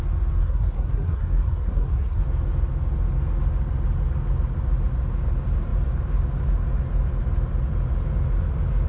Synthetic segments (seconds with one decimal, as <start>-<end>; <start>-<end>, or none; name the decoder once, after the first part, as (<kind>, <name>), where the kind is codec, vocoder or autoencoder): 0.4-2.2 (codec, SNAC)